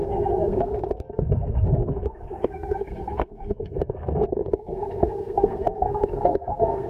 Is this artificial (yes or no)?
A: yes